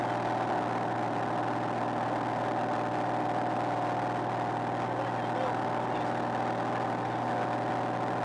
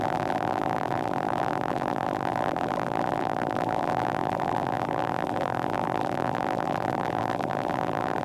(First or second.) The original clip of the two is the first